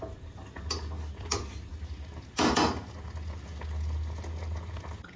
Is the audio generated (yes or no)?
no